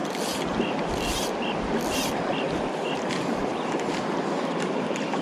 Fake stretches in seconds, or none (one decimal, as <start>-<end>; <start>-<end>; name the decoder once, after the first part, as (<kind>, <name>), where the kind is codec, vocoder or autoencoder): none